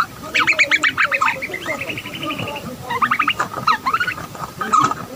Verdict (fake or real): fake